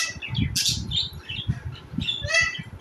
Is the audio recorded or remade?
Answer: recorded